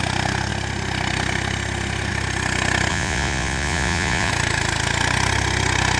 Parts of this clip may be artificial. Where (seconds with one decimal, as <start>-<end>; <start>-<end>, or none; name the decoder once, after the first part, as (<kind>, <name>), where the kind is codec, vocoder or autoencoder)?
2.9-4.3 (vocoder, Vocos)

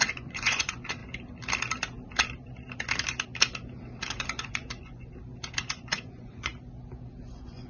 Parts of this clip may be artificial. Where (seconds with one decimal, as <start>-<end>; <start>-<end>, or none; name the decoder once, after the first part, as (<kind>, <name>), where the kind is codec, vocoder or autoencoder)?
0.0-1.0 (vocoder, Vocos); 4.1-5.0; 5.6-6.5; 7.2-7.7